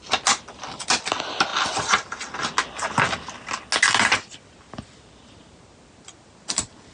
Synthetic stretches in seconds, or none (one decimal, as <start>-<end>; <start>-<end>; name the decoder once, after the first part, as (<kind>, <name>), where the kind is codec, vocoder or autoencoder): none